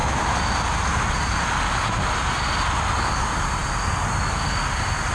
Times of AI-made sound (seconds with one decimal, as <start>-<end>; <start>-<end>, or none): none